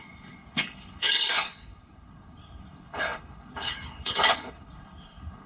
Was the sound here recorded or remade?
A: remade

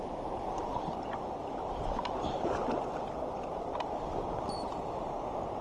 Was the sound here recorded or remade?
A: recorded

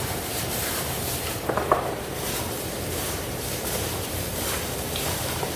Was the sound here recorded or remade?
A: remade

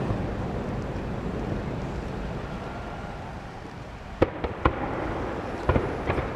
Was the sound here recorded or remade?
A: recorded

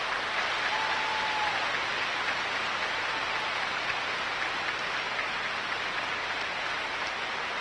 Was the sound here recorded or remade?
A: recorded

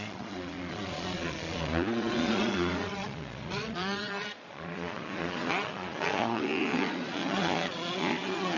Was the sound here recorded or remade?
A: remade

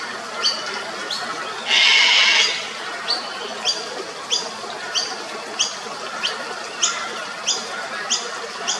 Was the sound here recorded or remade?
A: recorded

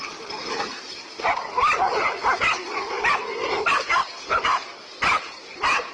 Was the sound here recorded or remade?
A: recorded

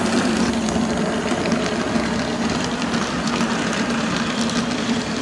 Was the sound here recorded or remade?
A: recorded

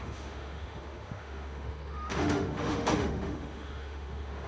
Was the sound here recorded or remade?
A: remade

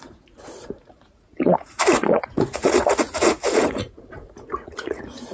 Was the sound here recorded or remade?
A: remade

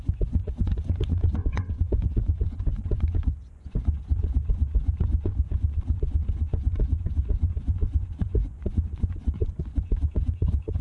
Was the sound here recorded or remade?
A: remade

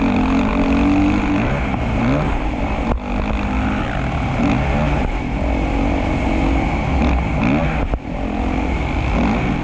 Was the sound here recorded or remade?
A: recorded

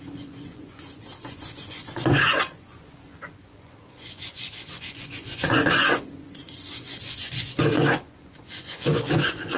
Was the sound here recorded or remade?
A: remade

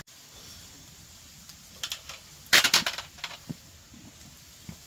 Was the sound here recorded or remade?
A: recorded